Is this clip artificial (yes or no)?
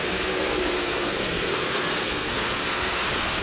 yes